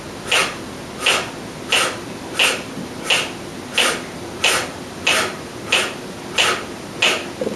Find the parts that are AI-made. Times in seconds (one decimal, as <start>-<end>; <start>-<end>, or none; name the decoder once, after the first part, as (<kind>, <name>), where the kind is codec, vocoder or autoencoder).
none